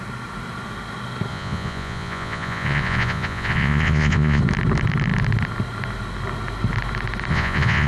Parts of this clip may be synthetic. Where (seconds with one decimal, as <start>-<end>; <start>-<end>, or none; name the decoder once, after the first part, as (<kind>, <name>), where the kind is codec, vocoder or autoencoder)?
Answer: 1.3-4.4 (vocoder, Vocos); 7.3-7.9